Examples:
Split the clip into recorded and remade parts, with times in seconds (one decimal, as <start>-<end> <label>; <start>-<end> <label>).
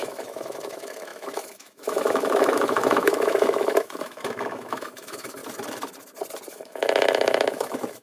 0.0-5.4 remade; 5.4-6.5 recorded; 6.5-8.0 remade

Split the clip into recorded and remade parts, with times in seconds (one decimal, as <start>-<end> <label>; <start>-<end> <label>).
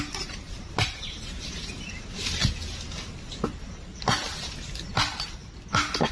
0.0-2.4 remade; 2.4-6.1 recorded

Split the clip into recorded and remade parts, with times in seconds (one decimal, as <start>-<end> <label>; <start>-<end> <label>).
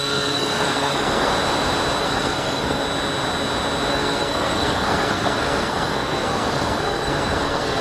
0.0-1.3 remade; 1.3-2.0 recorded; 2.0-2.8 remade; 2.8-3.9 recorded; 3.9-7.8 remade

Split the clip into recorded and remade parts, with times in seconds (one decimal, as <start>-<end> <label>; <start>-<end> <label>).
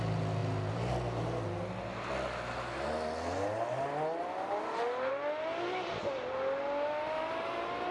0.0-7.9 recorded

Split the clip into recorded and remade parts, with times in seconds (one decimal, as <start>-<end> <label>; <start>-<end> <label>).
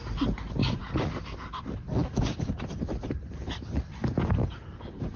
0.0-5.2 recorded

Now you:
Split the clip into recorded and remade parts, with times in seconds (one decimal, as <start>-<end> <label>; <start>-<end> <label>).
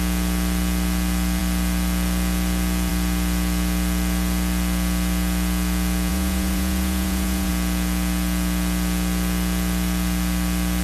0.0-6.1 recorded; 6.1-7.5 remade; 7.5-10.8 recorded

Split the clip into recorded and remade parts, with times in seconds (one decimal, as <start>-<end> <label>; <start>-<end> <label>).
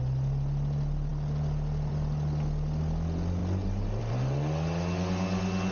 0.0-5.7 recorded